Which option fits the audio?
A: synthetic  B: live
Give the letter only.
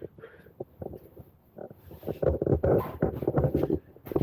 B